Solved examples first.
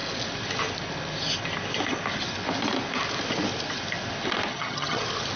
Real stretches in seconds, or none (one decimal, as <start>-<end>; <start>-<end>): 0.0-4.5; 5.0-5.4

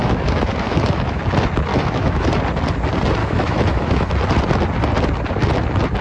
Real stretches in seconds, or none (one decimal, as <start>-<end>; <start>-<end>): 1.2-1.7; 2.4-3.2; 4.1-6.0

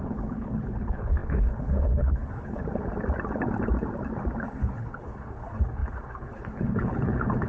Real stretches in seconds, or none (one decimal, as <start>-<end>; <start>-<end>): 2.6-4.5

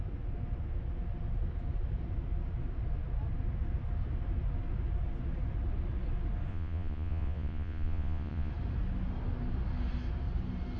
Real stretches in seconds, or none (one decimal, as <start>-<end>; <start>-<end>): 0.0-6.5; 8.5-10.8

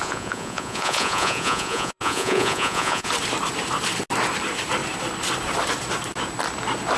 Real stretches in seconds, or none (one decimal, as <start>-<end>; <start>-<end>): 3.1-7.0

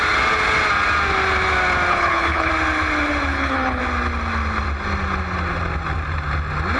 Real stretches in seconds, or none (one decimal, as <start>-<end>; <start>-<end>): 0.0-1.9; 2.5-3.3; 3.8-6.8

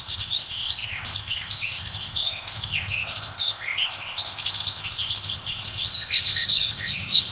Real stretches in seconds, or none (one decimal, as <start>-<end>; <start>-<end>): none